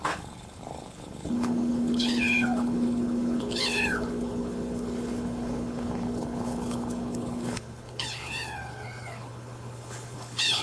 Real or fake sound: fake